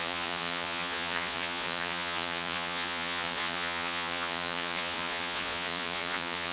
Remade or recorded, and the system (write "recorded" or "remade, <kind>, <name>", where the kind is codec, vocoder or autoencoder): remade, vocoder, Vocos